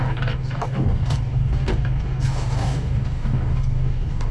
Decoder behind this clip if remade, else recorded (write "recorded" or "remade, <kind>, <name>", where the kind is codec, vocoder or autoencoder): remade, codec, DAC